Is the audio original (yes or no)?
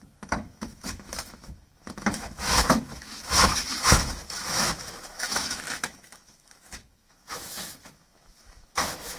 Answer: no